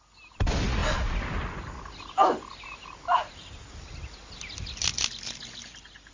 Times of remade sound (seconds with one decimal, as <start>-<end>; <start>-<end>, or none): none